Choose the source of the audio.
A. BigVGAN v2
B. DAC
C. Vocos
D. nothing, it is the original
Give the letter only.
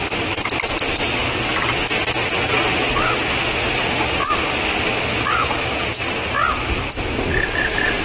D